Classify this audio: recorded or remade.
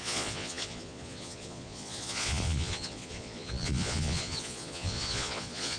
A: remade